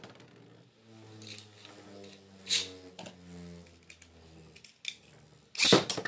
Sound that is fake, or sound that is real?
real